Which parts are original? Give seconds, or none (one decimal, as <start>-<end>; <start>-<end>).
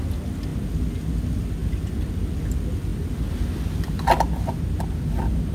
0.0-5.5